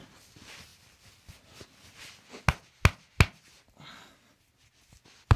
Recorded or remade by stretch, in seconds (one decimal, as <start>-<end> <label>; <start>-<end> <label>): 0.0-5.4 recorded